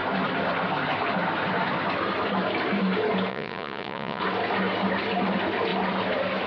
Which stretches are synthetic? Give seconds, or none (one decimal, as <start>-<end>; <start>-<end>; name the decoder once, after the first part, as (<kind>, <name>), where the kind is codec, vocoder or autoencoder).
3.3-4.2 (vocoder, Vocos)